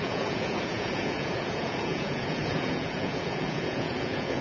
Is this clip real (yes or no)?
no